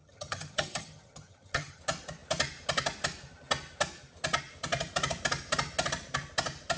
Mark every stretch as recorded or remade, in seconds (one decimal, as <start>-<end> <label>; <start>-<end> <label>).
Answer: 0.0-1.8 remade; 1.8-6.8 recorded